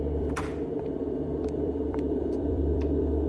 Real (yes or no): no